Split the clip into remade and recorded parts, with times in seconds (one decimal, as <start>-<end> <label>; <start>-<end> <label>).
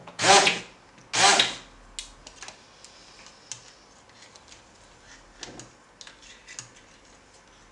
0.0-0.6 remade; 0.6-7.7 recorded